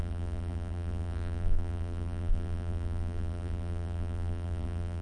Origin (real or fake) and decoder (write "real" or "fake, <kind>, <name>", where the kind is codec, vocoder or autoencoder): fake, vocoder, BigVGAN v2